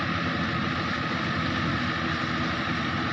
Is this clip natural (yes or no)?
yes